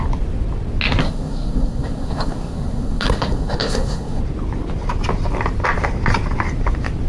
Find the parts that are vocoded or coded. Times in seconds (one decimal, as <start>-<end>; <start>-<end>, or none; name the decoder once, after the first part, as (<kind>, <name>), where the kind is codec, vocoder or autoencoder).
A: 1.0-4.2 (codec, SNAC)